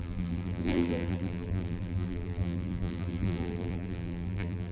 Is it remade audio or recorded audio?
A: remade